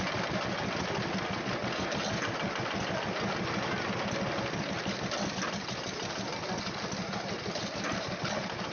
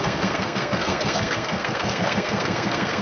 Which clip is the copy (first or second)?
second